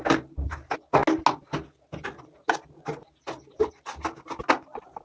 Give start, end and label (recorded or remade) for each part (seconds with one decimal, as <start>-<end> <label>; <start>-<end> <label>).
0.0-5.0 recorded